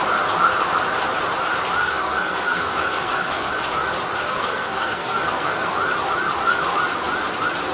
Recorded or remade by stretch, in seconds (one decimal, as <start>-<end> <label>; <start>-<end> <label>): 0.0-1.8 recorded; 1.8-3.5 remade; 3.5-4.3 recorded; 4.3-5.7 remade; 5.7-7.7 recorded